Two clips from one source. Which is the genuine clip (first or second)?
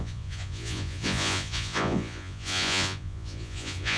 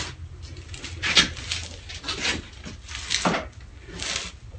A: second